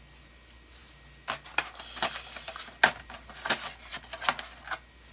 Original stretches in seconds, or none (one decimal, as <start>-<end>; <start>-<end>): 0.0-5.1

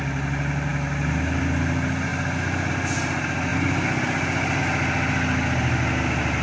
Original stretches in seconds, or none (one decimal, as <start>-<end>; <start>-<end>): 0.0-6.4

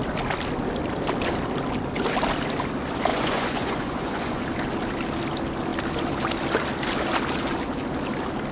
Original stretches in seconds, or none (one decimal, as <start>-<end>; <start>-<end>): 0.0-3.1; 4.4-8.5

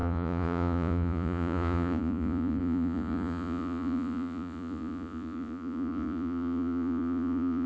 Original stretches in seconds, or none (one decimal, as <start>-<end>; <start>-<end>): none

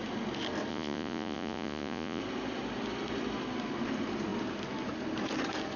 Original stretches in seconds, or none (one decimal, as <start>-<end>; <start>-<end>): 0.0-0.7; 2.2-5.8